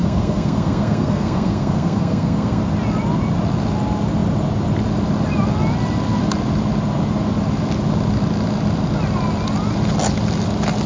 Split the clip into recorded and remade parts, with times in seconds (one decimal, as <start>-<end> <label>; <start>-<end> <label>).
0.0-2.6 remade; 2.6-10.9 recorded